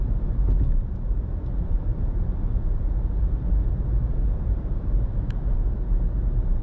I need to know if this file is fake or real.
fake